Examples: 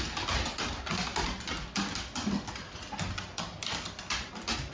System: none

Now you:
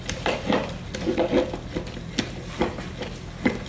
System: none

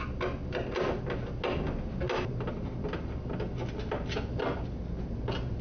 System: none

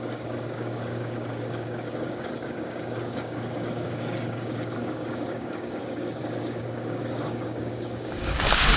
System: codec, DAC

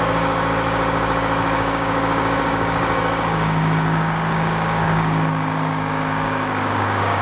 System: codec, DAC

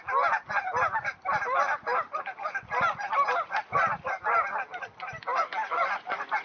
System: none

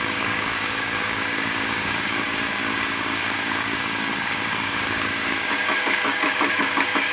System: codec, DAC